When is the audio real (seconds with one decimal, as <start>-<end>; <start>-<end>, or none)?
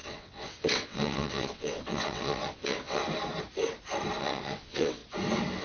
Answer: 3.0-4.2; 5.0-5.6